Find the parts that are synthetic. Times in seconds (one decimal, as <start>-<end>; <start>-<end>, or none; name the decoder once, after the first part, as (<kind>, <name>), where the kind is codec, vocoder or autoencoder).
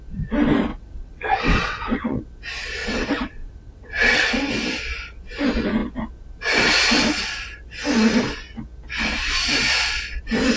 0.7-2.2 (vocoder, WaveNeXt); 2.8-4.5